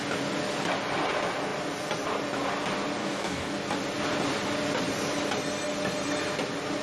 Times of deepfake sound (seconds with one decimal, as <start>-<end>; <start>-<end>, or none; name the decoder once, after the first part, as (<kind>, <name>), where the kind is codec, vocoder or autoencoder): 3.0-3.5 (codec, DAC)